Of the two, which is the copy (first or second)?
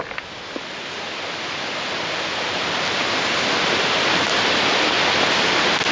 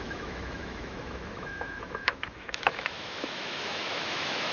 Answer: second